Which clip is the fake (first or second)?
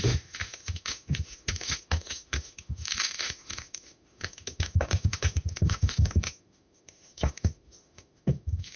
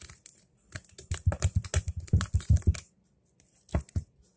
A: first